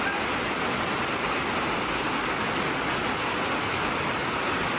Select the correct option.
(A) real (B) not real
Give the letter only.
A